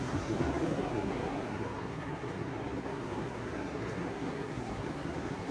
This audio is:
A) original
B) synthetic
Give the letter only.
B